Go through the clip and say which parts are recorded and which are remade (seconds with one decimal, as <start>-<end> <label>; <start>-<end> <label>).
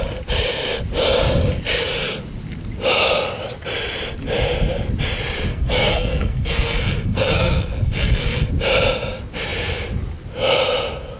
0.0-5.5 recorded; 5.5-8.5 remade; 8.5-11.2 recorded